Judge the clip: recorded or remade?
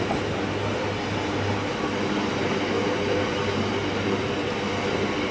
recorded